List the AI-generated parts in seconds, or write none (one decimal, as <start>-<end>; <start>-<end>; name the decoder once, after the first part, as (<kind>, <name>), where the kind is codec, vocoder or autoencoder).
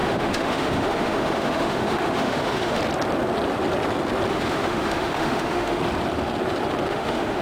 0.0-2.8 (autoencoder, DAC-VAE); 4.3-5.8; 6.9-7.4